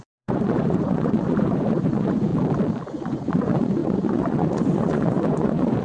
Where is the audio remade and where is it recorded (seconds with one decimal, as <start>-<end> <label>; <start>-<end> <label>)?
0.0-2.3 remade; 2.3-2.9 recorded; 2.9-5.8 remade